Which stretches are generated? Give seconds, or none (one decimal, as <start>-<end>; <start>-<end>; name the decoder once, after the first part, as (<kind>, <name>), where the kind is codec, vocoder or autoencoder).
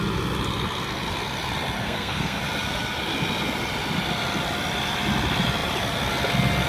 1.8-2.4 (codec, SNAC)